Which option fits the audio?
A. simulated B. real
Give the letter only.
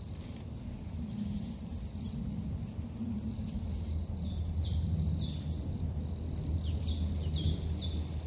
B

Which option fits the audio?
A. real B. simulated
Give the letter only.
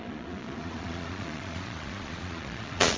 B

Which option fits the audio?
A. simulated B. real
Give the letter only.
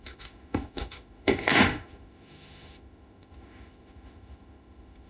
A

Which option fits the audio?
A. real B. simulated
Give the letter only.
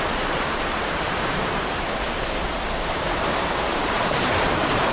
B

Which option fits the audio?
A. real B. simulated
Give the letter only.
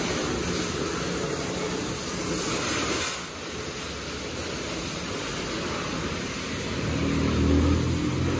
A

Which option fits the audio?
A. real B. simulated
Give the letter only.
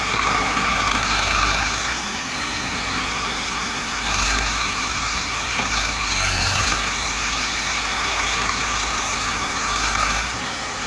B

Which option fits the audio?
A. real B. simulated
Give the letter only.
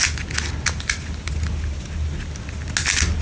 A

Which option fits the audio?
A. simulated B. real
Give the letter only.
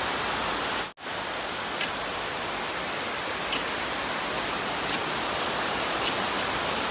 B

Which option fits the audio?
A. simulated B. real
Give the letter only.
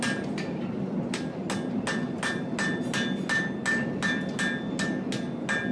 B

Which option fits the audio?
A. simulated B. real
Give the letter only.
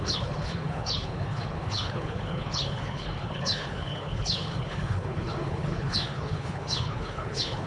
A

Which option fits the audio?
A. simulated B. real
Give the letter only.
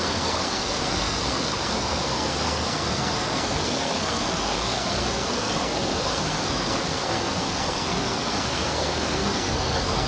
A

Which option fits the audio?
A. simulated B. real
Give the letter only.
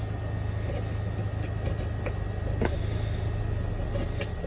B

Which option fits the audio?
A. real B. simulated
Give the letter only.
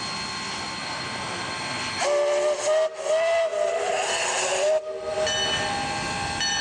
A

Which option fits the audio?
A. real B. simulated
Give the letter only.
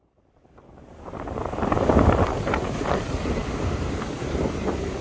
B